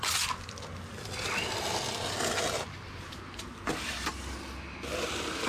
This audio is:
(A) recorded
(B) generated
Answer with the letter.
A